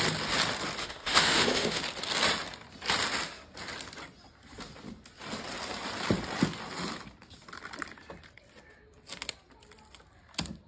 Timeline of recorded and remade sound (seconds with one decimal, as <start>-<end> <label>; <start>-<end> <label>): 0.0-0.8 recorded; 0.8-1.8 remade; 1.8-10.7 recorded